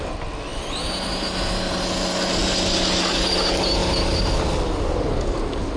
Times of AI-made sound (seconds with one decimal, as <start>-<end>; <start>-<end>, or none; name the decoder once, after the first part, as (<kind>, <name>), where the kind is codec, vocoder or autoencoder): none